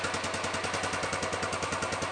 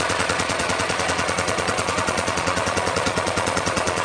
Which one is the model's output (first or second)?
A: second